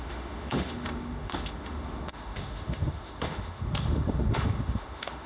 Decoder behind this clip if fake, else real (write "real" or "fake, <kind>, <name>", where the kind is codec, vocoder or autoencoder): fake, autoencoder, DAC-VAE